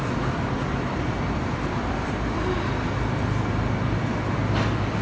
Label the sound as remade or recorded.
remade